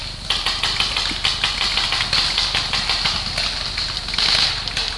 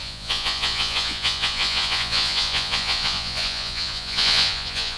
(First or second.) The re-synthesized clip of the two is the second